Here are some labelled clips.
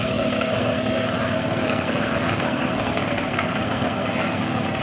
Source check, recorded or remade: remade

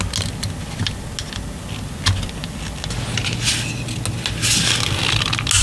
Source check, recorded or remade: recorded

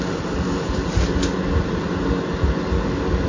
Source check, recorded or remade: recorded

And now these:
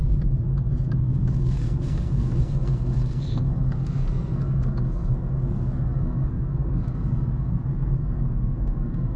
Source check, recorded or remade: remade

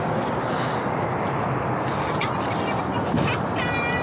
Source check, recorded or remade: recorded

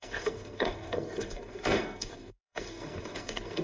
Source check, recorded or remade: remade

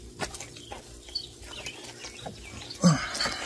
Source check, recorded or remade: recorded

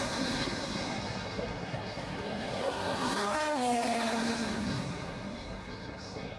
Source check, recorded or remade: remade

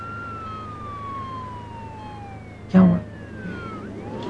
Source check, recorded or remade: recorded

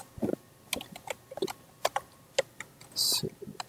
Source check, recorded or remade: recorded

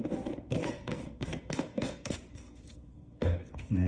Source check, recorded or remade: remade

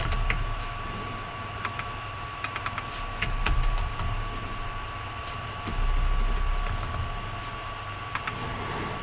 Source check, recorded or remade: recorded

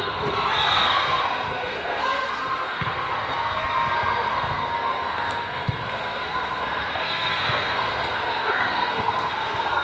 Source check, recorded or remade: remade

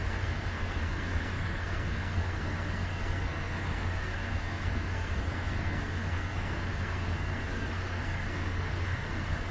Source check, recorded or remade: remade